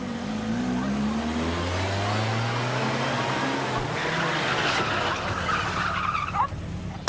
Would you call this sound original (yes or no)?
yes